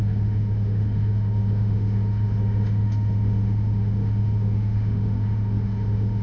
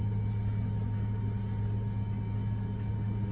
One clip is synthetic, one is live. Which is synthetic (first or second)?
first